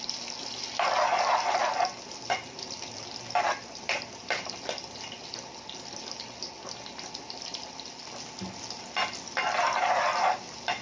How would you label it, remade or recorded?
recorded